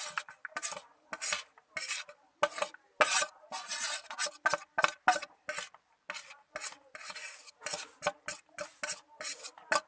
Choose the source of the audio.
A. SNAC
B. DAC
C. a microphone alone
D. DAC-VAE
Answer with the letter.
C